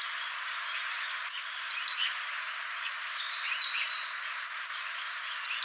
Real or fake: real